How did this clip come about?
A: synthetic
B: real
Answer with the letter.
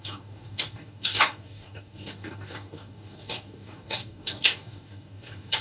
A